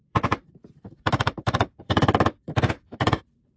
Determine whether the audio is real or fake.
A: fake